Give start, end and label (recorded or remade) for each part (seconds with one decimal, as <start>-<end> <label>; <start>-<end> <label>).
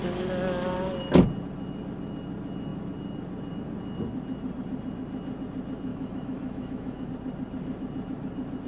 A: 0.0-5.9 recorded; 5.9-7.1 remade; 7.1-8.7 recorded